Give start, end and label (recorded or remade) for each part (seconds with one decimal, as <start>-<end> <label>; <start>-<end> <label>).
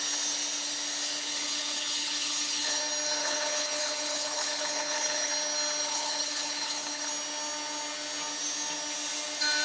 0.0-1.2 recorded; 1.2-2.8 remade; 2.8-3.2 recorded; 3.2-5.3 remade; 5.3-5.8 recorded; 5.8-7.1 remade; 7.1-9.6 recorded